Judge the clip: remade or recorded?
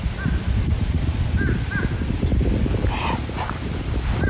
remade